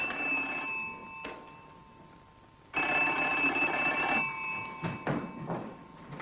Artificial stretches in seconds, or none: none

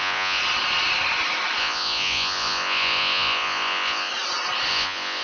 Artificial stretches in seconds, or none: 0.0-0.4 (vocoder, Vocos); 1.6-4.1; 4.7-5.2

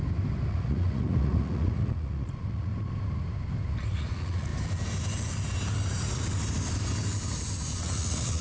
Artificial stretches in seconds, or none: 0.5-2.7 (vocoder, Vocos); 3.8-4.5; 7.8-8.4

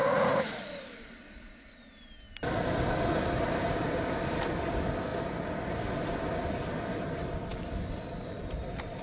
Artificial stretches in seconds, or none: 0.0-0.6 (vocoder, Vocos)

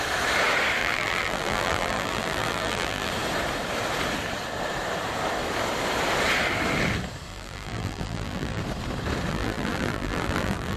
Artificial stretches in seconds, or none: 0.8-3.1 (vocoder, BigVGAN v2); 7.3-8.6; 9.3-10.8

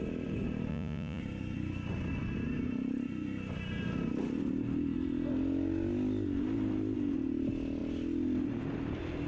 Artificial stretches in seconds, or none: 0.7-1.2 (vocoder, Vocos)